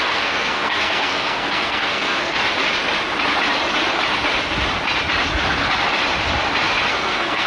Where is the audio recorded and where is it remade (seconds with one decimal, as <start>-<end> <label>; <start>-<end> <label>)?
0.0-2.4 remade; 2.4-6.9 recorded; 6.9-7.5 remade